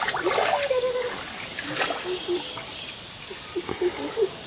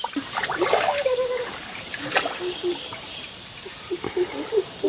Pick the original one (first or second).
first